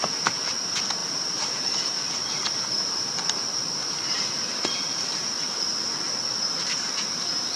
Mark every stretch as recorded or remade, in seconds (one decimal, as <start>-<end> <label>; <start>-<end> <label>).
0.0-7.6 recorded